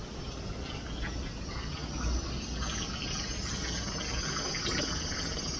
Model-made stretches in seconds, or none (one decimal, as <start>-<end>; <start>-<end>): none